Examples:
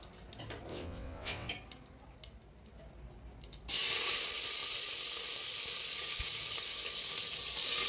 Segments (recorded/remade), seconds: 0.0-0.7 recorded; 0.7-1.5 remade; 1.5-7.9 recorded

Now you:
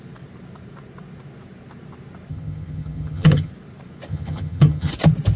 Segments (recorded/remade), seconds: 0.0-2.3 recorded; 2.3-3.5 remade; 3.5-4.1 recorded; 4.1-4.9 remade; 4.9-5.4 recorded

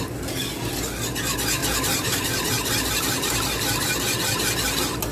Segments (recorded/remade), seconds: 0.0-1.6 recorded; 1.6-2.9 remade; 2.9-5.1 recorded

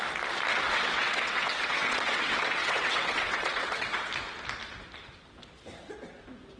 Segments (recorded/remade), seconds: 0.0-0.5 recorded; 0.5-4.1 remade; 4.1-6.6 recorded

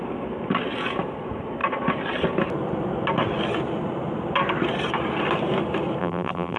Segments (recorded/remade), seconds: 0.0-6.0 recorded; 6.0-6.6 remade

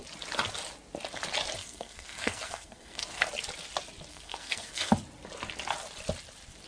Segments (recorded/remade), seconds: 0.0-1.6 recorded; 1.6-3.2 remade; 3.2-4.1 recorded; 4.1-4.9 remade; 4.9-6.7 recorded

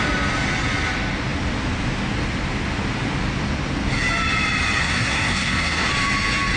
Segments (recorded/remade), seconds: 0.0-4.8 recorded; 4.8-5.9 remade; 5.9-6.6 recorded